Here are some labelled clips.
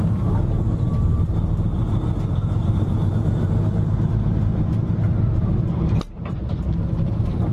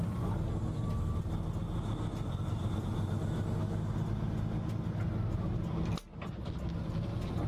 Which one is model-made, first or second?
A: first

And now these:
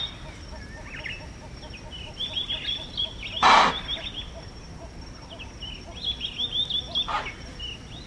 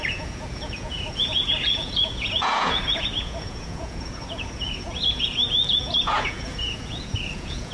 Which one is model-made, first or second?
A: second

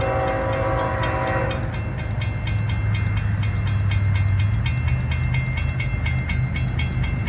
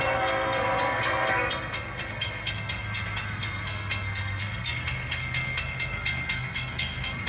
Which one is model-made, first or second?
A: second